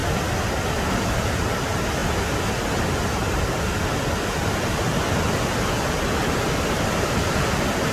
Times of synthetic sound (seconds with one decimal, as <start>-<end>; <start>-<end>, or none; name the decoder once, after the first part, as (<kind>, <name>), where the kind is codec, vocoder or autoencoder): 1.0-2.0 (vocoder, BigVGAN v2); 6.7-7.9